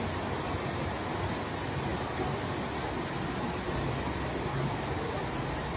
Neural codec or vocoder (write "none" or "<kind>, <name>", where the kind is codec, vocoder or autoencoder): none